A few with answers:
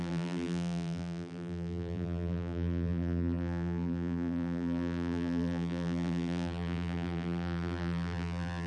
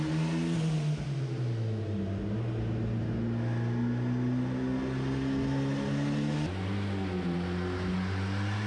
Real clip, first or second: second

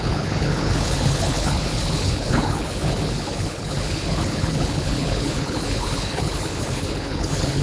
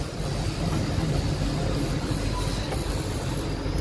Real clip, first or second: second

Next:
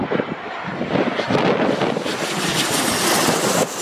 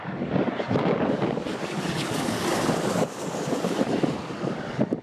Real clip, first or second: first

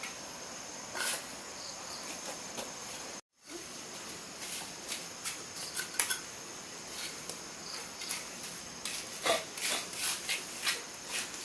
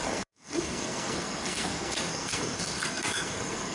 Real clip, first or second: first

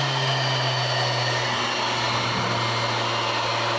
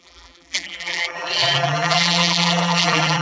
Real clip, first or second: first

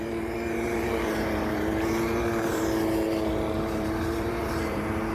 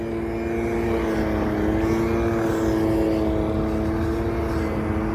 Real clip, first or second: second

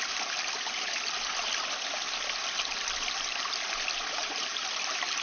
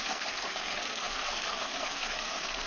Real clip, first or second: first